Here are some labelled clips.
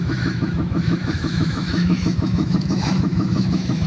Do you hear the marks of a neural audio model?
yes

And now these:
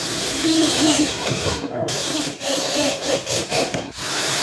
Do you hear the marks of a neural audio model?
yes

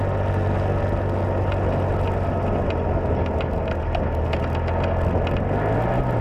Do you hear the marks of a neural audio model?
no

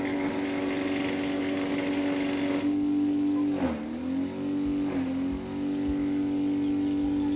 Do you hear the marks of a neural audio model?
no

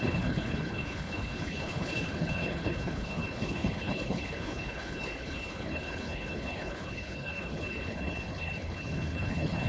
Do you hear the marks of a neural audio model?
yes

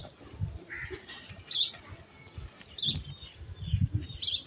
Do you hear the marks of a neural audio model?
no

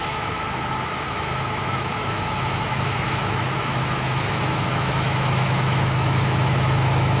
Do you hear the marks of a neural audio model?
yes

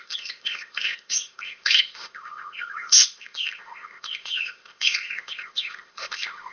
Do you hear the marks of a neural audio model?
yes